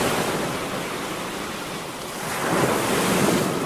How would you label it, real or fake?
real